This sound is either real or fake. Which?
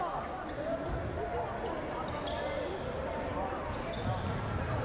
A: real